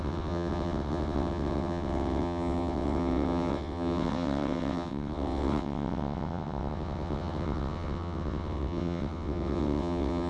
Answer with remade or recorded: remade